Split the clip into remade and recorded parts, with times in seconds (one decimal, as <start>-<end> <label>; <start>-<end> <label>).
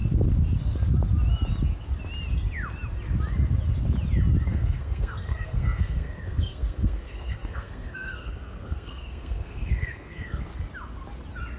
0.0-4.5 recorded; 4.5-10.5 remade; 10.5-11.6 recorded